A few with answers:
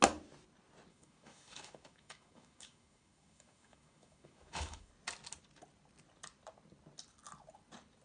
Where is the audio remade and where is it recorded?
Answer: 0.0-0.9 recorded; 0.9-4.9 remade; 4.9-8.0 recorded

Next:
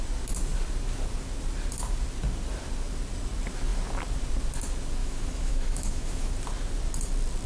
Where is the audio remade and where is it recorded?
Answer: 0.0-5.0 recorded; 5.0-6.3 remade; 6.3-7.5 recorded

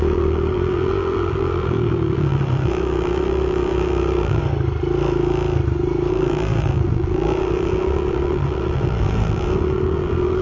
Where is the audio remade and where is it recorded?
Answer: 0.0-4.4 remade; 4.4-6.1 recorded; 6.1-10.4 remade

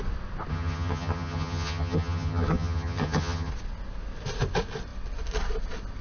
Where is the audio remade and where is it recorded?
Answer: 0.0-0.5 recorded; 0.5-3.5 remade; 3.5-6.0 recorded

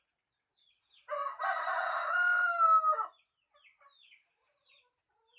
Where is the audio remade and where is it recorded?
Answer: 0.0-5.4 recorded

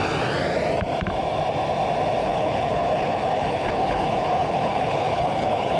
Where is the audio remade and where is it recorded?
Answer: 0.0-2.2 recorded; 2.2-5.8 remade

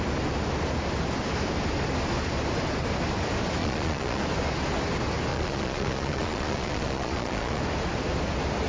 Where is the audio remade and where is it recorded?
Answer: 0.0-3.6 recorded; 3.6-4.2 remade; 4.2-5.3 recorded; 5.3-7.6 remade; 7.6-8.7 recorded